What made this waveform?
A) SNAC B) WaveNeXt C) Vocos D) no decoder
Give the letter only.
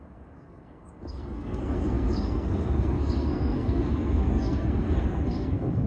A